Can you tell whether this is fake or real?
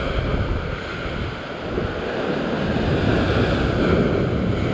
real